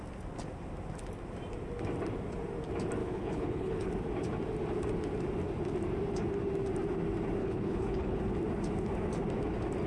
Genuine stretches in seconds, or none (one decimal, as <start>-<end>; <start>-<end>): 0.0-3.0; 3.9-7.4; 8.2-9.9